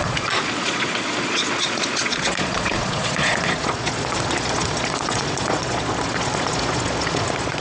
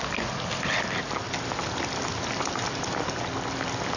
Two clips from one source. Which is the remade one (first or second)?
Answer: first